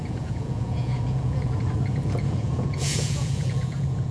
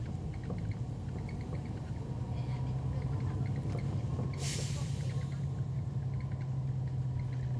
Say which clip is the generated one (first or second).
first